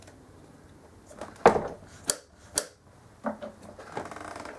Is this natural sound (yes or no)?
yes